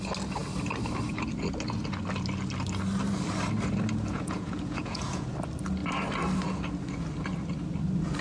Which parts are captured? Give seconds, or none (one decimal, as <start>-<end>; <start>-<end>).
0.0-4.1; 5.3-8.2